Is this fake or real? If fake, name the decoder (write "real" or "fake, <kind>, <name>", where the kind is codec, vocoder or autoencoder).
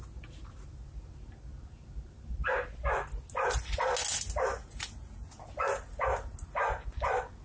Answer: real